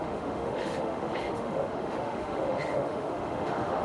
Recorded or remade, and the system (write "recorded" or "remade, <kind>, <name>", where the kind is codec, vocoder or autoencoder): remade, autoencoder, DAC-VAE